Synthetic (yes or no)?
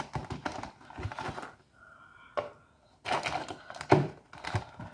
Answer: no